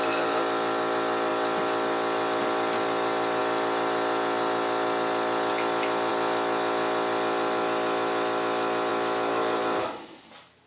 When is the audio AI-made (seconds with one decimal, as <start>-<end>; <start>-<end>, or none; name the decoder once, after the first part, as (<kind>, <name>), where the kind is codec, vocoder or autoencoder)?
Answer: none